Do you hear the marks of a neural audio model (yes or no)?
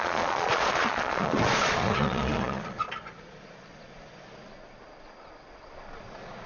yes